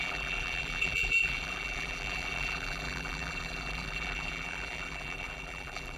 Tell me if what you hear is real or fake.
fake